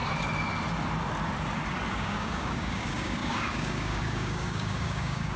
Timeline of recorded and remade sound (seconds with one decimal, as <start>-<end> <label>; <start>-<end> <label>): 0.0-1.9 recorded; 1.9-5.4 remade